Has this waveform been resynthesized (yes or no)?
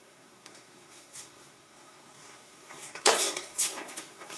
yes